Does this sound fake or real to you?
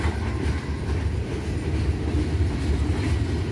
real